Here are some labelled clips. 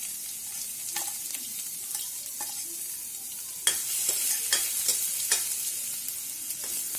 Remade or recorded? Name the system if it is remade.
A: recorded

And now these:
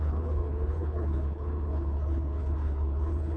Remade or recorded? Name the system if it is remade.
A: remade, codec, HILCodec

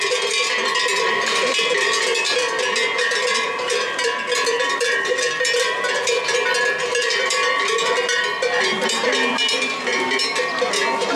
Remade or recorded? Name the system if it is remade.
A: remade, vocoder, BigVGAN v2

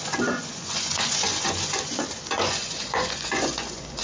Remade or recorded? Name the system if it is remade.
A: remade, vocoder, Vocos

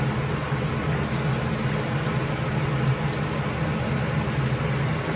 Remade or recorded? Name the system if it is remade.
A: recorded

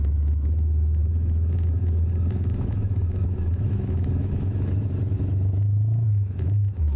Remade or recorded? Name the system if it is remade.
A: remade, autoencoder, DAC-VAE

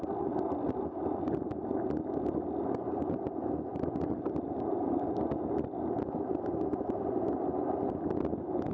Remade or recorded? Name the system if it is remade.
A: recorded